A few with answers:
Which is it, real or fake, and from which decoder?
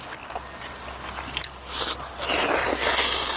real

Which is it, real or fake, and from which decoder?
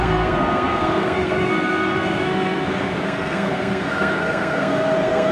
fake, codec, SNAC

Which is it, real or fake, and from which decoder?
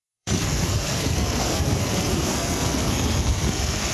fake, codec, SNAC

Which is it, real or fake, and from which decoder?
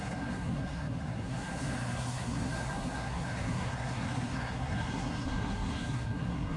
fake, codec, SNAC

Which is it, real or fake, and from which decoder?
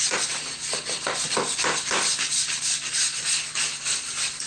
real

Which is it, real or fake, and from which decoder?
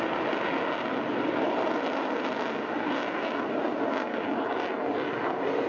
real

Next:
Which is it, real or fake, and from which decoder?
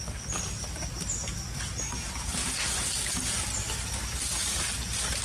real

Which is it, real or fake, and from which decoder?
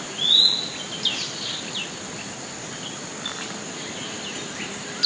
real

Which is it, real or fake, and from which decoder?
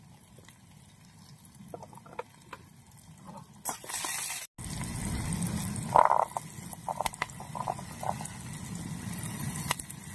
real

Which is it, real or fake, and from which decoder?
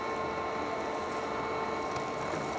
real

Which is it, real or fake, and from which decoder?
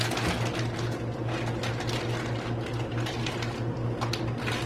real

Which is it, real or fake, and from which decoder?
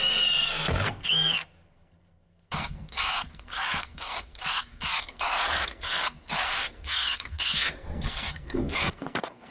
fake, codec, SNAC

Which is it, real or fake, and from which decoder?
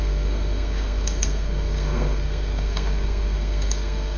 fake, codec, SNAC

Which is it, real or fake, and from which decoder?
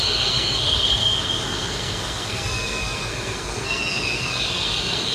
fake, codec, SNAC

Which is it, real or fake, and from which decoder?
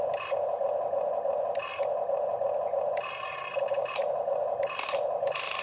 real